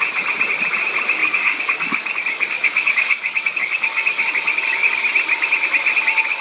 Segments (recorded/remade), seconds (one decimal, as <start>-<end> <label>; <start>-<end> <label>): 0.0-1.2 recorded; 1.2-5.0 remade; 5.0-6.4 recorded